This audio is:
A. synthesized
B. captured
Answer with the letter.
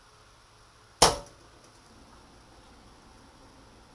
B